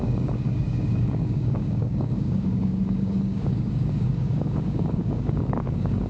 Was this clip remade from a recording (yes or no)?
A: yes